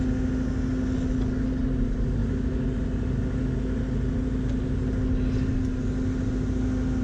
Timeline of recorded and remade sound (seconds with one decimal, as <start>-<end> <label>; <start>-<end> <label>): 0.0-7.0 recorded

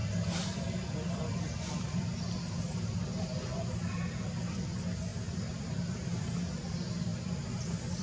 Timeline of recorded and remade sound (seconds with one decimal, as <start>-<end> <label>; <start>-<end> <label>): 0.0-3.6 remade; 3.6-8.0 recorded

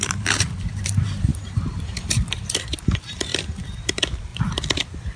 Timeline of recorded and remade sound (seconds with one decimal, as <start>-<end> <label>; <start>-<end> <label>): 0.0-4.3 remade; 4.3-5.2 recorded